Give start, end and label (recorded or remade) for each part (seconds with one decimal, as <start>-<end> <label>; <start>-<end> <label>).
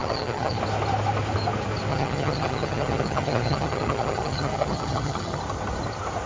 0.0-0.6 remade; 0.6-1.9 recorded; 1.9-5.4 remade; 5.4-6.3 recorded